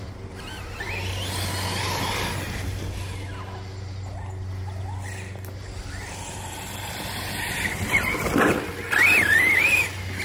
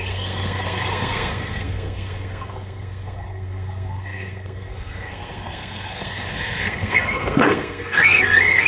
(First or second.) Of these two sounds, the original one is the first